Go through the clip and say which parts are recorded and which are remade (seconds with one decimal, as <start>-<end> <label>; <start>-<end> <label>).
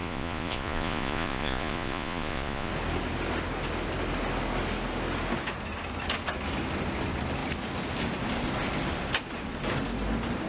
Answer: 0.0-2.7 remade; 2.7-10.5 recorded